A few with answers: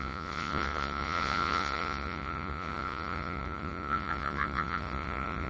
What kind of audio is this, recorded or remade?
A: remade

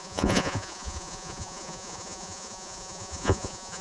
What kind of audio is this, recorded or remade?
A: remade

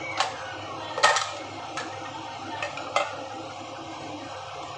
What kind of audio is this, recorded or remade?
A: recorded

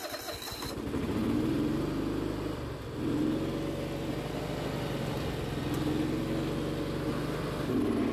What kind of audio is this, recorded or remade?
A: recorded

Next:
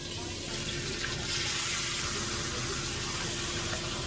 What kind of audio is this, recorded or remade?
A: recorded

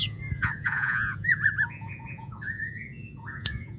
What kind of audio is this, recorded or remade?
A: remade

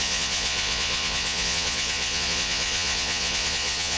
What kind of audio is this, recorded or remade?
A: remade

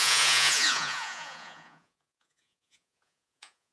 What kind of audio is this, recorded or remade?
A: remade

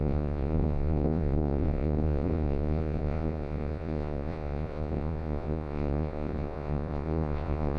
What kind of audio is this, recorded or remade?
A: remade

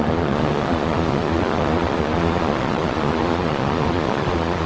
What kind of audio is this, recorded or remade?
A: remade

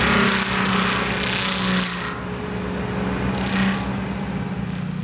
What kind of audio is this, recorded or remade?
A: recorded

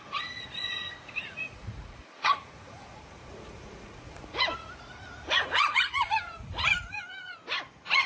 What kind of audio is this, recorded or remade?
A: remade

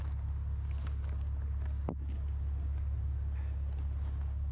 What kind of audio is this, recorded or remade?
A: recorded